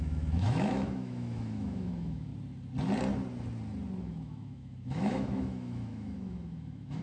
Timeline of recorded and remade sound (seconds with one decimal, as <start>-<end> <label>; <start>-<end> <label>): 0.0-2.3 remade; 2.3-4.0 recorded; 4.0-7.0 remade